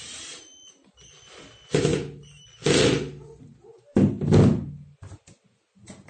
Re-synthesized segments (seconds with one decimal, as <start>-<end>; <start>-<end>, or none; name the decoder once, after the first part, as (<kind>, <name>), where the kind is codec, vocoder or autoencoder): none